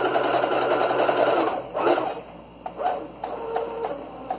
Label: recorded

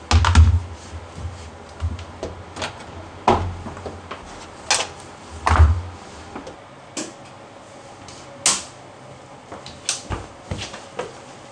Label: recorded